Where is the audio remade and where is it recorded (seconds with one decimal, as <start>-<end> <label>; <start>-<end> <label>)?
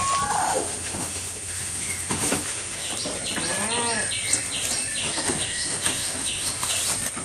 0.0-0.4 recorded; 0.4-2.9 remade; 2.9-5.0 recorded; 5.0-6.7 remade; 6.7-7.2 recorded